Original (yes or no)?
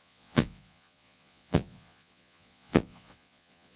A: no